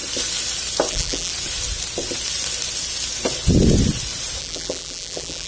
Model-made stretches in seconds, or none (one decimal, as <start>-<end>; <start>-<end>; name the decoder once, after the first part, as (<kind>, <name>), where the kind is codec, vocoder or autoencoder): 0.9-1.3 (vocoder, BigVGAN v2); 4.4-5.5